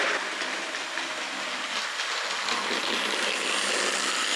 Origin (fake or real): real